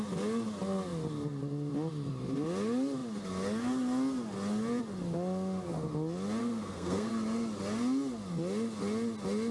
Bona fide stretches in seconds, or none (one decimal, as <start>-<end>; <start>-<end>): 0.0-6.4; 7.1-9.5